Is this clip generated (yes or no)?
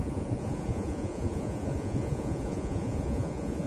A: yes